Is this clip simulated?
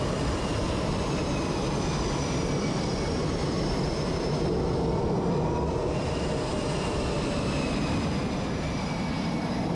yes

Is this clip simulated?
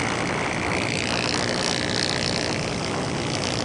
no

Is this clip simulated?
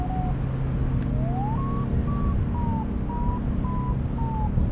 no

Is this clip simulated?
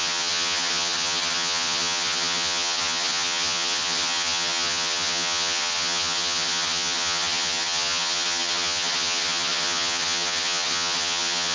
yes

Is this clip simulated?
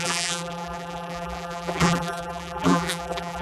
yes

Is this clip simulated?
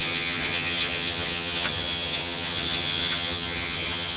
yes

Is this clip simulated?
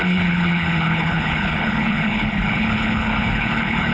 yes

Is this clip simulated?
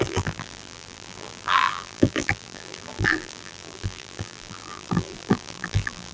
yes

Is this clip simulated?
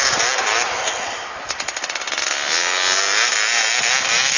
no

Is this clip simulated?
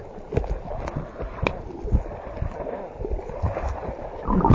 no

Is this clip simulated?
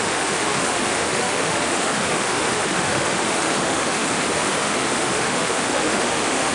yes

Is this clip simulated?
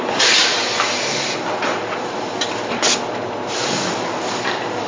no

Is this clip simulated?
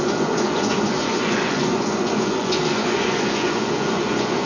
yes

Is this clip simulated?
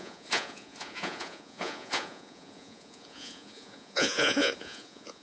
yes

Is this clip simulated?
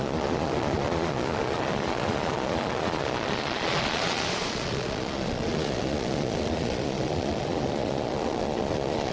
yes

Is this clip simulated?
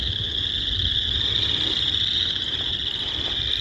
no